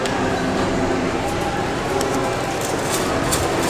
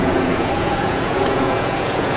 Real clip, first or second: first